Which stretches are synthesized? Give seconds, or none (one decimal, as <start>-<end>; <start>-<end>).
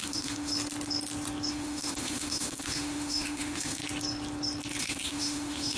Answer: 0.0-0.5; 1.5-3.8; 4.8-5.8